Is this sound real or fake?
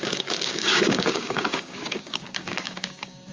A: fake